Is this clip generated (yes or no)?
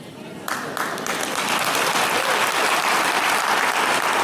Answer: no